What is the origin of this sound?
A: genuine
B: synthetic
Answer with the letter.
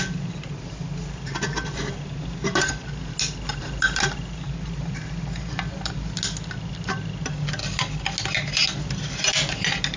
A